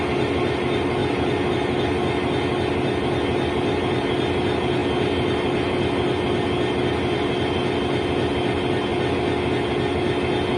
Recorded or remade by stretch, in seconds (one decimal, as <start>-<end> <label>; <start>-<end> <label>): 0.0-10.6 recorded